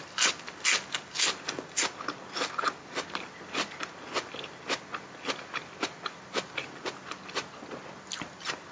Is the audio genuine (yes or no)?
yes